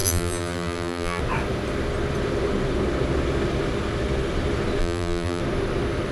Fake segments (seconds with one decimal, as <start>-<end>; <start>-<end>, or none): 0.0-1.2; 4.8-5.4